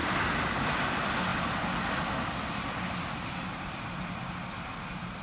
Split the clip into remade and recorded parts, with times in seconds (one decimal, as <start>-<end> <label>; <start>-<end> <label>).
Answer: 0.0-0.8 remade; 0.8-5.2 recorded